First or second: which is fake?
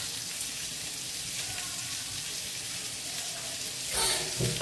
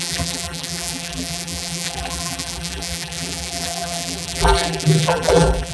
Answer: second